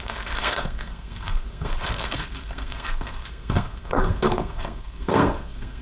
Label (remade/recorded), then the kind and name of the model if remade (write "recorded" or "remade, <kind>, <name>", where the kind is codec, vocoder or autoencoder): remade, codec, SNAC